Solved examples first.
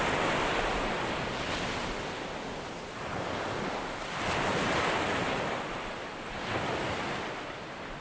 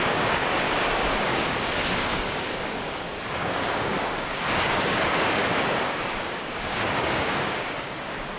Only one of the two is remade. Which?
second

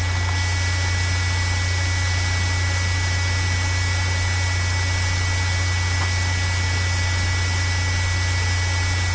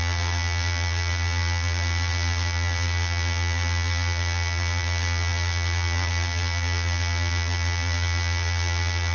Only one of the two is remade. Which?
second